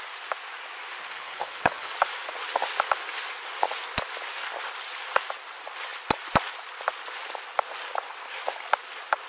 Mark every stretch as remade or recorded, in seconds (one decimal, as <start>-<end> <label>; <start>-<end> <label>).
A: 0.0-1.0 recorded; 1.0-1.9 remade; 1.9-9.3 recorded